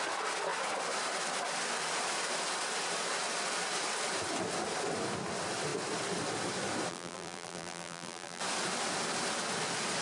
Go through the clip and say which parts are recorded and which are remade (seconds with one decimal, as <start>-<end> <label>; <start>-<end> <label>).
0.0-6.9 recorded; 6.9-8.4 remade; 8.4-10.0 recorded